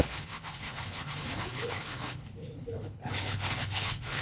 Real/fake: fake